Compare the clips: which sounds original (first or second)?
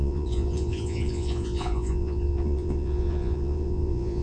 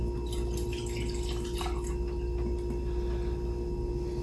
second